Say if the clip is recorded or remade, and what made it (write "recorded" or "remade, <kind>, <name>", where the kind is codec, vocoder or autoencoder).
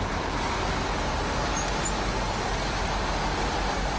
recorded